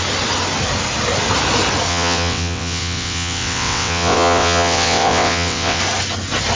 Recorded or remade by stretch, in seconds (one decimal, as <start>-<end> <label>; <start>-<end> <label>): 0.0-1.9 recorded; 1.9-5.8 remade; 5.8-6.6 recorded